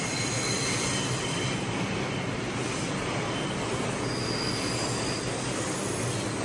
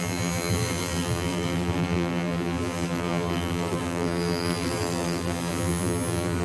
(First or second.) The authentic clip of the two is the first